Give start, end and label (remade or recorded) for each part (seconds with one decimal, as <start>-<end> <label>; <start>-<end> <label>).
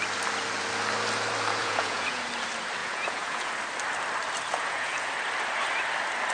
0.0-1.6 recorded; 1.6-2.3 remade; 2.3-2.8 recorded; 2.8-3.5 remade; 3.5-4.5 recorded; 4.5-5.1 remade; 5.1-6.3 recorded